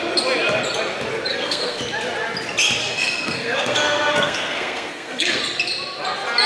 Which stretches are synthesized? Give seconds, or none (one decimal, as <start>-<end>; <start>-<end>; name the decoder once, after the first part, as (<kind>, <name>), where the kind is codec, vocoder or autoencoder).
1.3-1.8 (codec, SNAC); 2.8-5.4